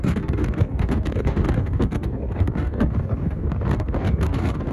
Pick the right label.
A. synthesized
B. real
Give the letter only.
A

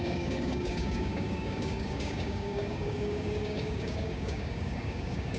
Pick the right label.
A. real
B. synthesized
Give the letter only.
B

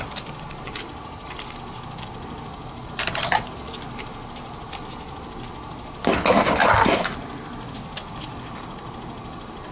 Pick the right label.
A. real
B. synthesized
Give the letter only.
A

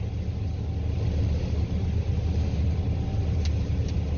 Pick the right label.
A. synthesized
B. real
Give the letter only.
B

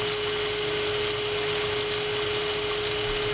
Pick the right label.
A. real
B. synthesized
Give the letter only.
A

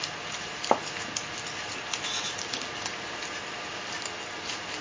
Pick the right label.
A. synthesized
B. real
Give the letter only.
B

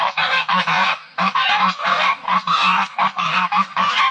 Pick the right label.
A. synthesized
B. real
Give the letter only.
A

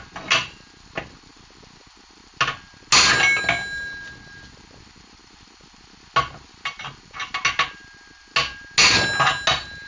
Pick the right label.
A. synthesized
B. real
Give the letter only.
B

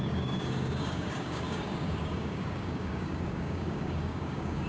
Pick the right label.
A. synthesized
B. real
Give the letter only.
A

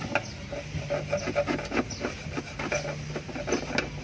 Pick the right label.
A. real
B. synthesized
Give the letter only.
A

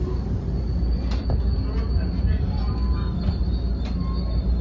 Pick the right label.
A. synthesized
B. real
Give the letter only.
B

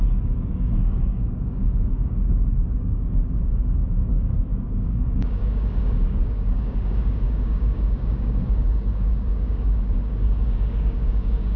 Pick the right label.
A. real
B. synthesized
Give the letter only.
B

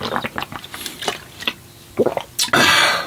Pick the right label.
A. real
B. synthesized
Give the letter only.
A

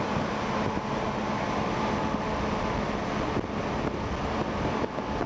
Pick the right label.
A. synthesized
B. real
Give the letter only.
B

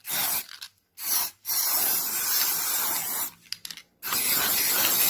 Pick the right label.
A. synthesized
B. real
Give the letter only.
B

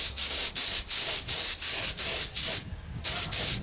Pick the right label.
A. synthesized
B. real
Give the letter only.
A